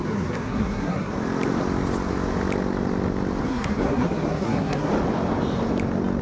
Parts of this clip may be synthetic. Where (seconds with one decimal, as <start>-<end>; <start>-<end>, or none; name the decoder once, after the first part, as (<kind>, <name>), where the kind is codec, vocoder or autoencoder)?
0.0-1.1 (codec, SNAC); 3.4-4.9